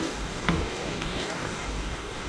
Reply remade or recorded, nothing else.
remade